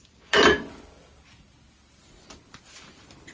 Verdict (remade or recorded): recorded